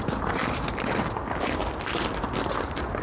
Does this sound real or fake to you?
real